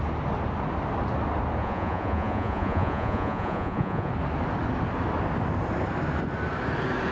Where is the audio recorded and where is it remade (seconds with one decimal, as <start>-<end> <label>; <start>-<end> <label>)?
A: 0.0-1.6 recorded; 1.6-4.1 remade; 4.1-7.1 recorded